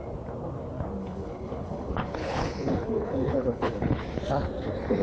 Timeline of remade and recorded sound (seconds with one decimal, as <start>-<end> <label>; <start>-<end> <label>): 0.0-1.0 recorded; 1.0-4.0 remade; 4.0-5.0 recorded